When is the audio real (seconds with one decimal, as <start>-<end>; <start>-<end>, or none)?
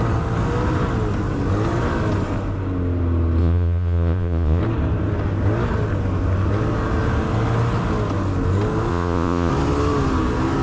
0.0-3.4; 4.6-8.9; 9.5-10.6